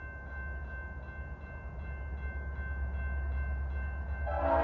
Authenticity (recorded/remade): recorded